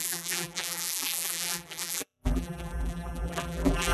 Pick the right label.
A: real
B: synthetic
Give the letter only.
B